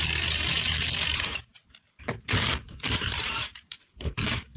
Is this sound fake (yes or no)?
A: yes